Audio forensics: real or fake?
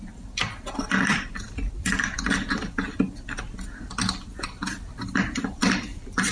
fake